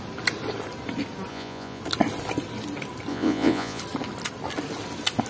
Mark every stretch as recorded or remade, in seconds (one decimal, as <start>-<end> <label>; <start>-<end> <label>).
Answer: 0.0-1.3 recorded; 1.3-1.8 remade; 1.8-3.1 recorded; 3.1-3.8 remade; 3.8-5.3 recorded